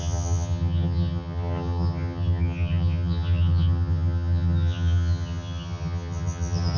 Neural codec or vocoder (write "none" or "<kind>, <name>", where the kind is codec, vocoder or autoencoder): vocoder, HiFi-GAN